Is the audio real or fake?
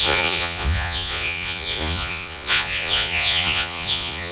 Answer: fake